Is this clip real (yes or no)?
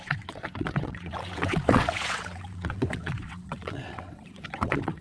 no